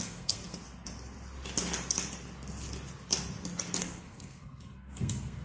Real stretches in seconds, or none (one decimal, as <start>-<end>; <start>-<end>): 0.6-3.8